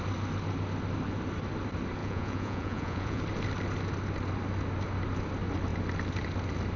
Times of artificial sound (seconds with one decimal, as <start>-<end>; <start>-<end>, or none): 2.0-3.2